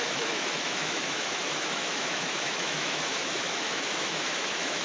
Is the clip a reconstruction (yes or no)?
yes